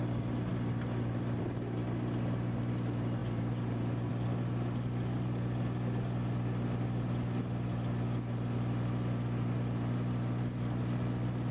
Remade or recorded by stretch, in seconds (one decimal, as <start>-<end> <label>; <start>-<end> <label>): 0.0-11.5 recorded